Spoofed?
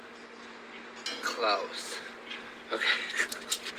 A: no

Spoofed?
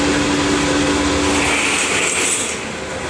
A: no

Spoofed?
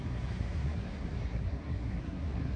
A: yes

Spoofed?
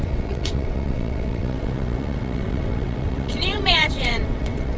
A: yes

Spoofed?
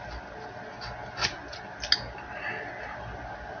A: no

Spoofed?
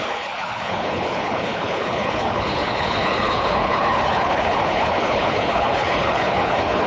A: yes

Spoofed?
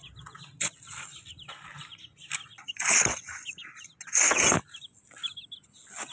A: no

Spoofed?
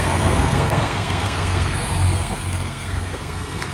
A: yes